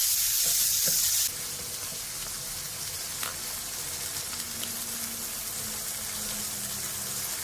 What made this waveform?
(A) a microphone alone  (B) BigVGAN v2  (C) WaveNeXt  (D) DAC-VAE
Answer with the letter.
A